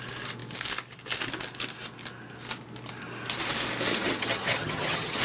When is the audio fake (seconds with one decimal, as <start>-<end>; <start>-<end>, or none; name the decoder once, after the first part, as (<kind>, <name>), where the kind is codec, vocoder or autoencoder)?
3.9-5.2 (vocoder, HiFi-GAN)